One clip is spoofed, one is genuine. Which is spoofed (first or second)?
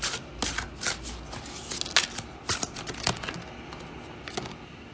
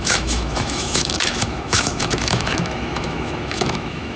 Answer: second